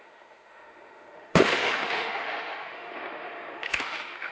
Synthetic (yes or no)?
yes